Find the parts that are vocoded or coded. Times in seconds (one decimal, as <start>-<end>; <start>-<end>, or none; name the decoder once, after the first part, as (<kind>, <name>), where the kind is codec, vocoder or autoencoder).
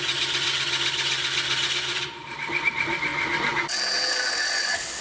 0.0-3.1 (vocoder, BigVGAN v2); 4.6-5.0